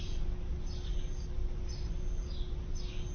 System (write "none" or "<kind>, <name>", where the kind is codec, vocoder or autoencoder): none